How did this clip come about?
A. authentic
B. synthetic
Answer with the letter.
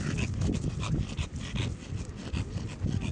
A